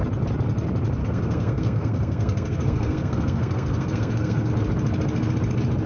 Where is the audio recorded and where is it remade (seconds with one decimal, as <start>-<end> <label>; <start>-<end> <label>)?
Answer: 0.0-1.0 recorded; 1.0-4.5 remade; 4.5-5.9 recorded